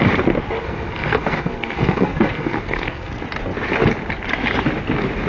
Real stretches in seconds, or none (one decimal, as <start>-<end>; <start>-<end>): 0.0-0.6; 3.1-5.3